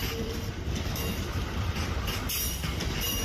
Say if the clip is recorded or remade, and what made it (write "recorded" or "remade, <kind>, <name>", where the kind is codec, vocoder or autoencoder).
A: remade, vocoder, BigVGAN v2